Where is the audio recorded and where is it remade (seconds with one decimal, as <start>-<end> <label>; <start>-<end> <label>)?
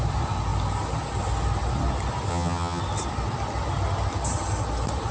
0.0-2.3 recorded; 2.3-2.8 remade; 2.8-5.1 recorded